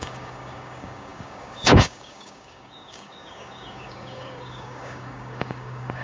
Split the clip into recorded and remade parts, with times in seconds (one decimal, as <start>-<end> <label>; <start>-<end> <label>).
0.0-6.0 remade

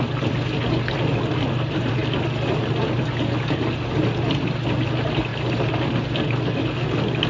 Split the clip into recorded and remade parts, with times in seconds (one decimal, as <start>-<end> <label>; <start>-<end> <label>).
0.0-7.3 recorded

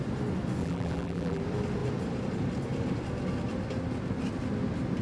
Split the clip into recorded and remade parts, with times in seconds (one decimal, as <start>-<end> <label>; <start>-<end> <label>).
0.0-0.6 recorded; 0.6-1.4 remade; 1.4-5.0 recorded

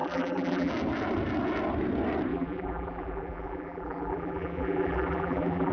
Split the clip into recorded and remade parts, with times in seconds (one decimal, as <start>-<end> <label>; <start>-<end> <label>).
0.0-0.7 remade; 0.7-2.3 recorded; 2.3-5.7 remade